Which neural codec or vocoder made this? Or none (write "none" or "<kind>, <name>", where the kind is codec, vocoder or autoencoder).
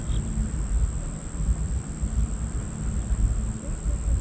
none